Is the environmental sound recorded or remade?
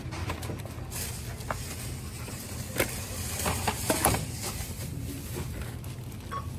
recorded